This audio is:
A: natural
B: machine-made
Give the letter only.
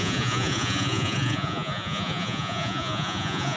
B